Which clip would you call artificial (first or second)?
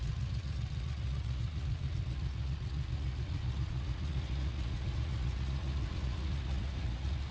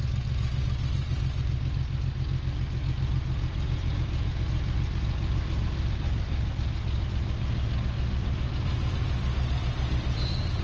first